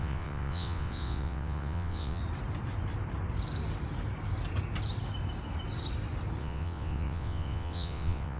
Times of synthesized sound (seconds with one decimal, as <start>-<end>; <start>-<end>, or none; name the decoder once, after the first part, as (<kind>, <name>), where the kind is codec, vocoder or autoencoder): 0.0-2.2 (vocoder, WaveNeXt); 6.4-8.4